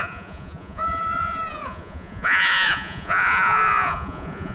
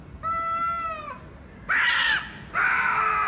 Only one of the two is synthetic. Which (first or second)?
first